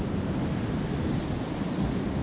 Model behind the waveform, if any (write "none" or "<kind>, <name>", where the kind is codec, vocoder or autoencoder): none